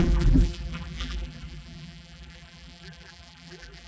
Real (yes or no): no